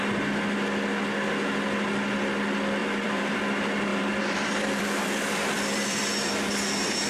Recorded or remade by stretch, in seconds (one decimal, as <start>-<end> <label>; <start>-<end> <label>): 0.0-2.8 recorded; 2.8-3.4 remade; 3.4-3.9 recorded; 3.9-6.0 remade; 6.0-7.1 recorded